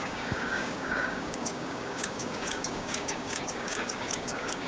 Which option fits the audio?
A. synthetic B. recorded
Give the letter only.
A